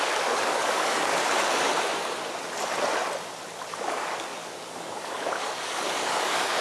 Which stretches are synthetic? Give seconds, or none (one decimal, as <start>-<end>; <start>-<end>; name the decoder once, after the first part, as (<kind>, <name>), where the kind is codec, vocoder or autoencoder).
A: 0.0-1.1 (codec, DAC); 3.7-6.6